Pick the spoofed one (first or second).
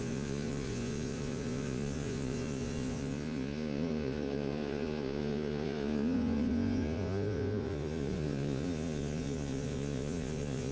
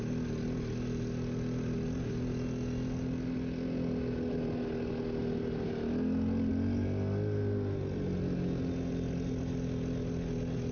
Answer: first